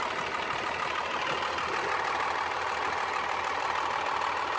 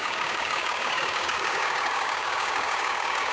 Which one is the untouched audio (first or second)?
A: first